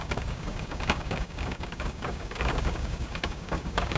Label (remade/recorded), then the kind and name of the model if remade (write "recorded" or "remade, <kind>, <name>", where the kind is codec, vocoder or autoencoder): remade, codec, DAC